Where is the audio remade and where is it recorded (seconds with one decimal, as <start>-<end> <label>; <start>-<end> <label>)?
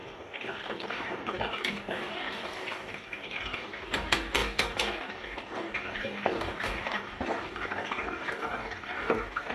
0.0-9.5 remade